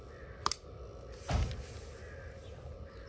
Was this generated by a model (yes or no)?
no